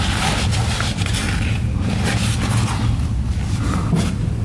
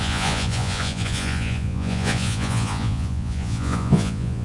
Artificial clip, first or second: second